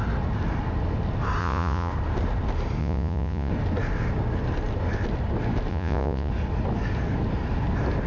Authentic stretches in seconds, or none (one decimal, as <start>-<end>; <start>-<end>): 0.0-1.4; 1.9-2.8; 3.5-5.7; 6.3-8.1